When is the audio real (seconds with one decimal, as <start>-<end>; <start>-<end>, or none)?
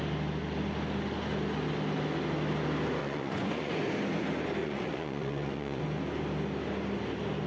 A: 0.0-3.0; 3.8-4.6; 5.8-7.5